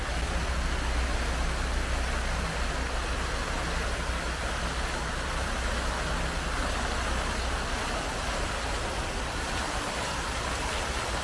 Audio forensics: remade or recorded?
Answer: recorded